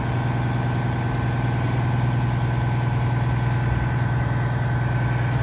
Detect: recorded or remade recorded